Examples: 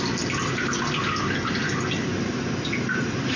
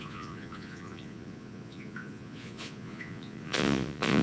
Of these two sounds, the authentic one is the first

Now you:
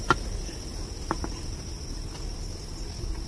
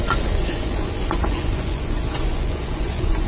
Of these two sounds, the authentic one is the first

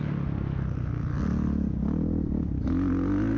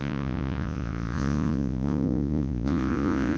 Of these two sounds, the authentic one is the first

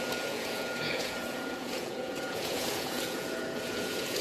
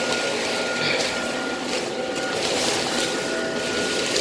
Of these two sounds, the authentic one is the second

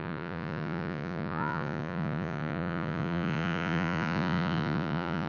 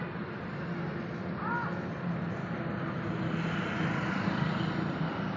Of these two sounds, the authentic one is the second